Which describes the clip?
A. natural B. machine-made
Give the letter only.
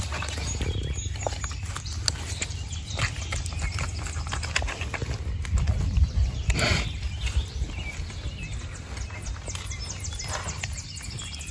A